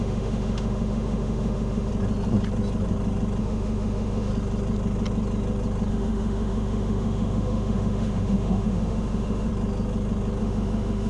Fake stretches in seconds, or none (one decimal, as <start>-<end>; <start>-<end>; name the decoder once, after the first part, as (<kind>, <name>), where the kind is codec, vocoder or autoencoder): 0.0-1.9 (autoencoder, DAC-VAE); 3.4-4.3; 5.9-9.5; 10.4-11.1